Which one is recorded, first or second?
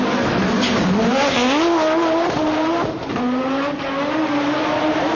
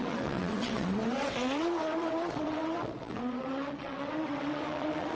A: first